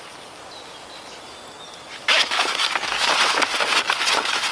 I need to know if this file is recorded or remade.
recorded